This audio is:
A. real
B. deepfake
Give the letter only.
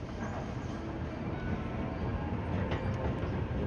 A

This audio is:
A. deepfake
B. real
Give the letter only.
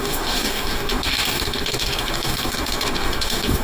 A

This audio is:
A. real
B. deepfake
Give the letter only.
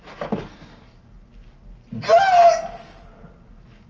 A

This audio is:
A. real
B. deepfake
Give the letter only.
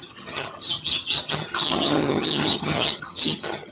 B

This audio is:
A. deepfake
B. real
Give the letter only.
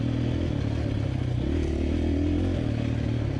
B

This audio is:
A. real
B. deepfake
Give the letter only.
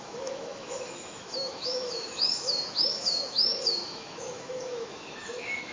B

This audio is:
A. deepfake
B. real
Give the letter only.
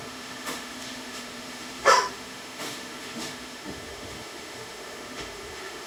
A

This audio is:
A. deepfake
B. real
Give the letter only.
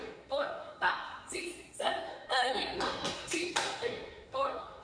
A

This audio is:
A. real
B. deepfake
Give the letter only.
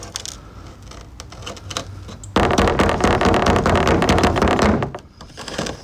A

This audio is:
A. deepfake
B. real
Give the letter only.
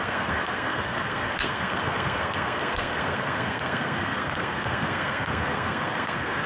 A